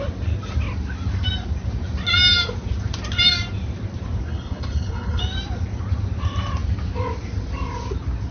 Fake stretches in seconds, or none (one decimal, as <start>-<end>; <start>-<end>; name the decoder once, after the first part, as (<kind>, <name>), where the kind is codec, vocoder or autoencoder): 4.3-5.2 (codec, HILCodec)